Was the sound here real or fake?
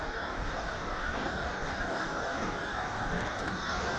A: fake